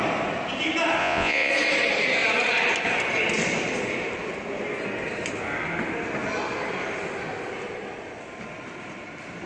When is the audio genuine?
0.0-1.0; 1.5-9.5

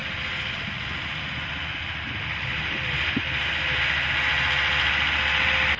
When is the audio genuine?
0.0-5.8

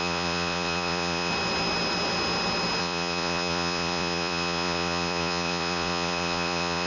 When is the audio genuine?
1.3-2.8

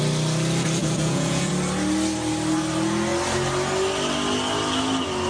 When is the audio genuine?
0.0-0.8; 1.5-5.3